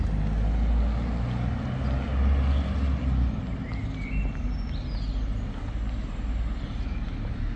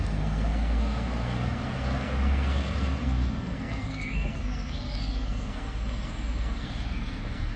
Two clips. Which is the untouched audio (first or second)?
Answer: first